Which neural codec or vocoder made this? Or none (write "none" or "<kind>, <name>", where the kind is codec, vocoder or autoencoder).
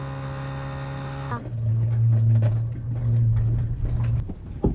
none